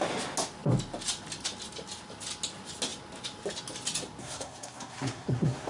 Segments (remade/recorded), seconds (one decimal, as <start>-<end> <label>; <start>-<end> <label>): 0.0-4.2 recorded; 4.2-5.7 remade